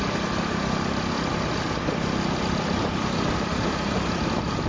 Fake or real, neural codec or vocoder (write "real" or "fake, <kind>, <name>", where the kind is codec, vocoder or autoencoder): fake, vocoder, BigVGAN v2